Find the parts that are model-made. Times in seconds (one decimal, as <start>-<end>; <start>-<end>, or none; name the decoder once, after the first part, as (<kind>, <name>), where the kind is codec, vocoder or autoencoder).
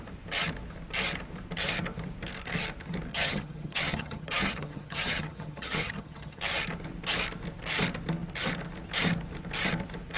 3.1-6.4 (vocoder, HiFi-GAN)